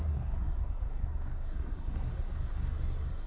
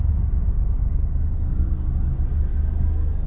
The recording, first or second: second